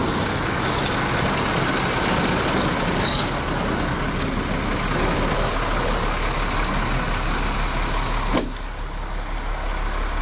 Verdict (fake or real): real